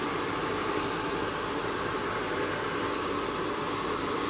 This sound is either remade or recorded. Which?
recorded